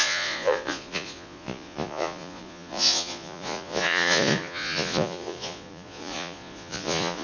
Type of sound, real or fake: fake